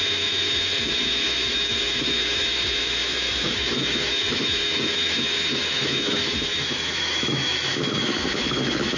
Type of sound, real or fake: fake